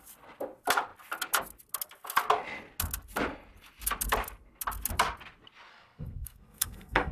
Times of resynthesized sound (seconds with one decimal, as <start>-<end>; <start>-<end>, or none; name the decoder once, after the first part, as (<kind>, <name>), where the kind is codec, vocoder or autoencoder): 5.7-7.1 (codec, SNAC)